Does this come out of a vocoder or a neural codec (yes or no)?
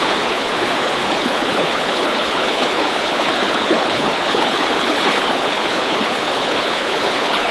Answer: yes